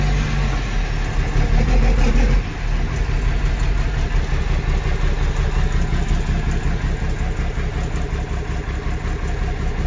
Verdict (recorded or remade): recorded